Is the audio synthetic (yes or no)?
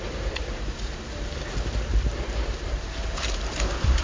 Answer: yes